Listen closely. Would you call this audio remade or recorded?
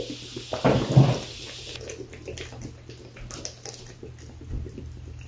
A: recorded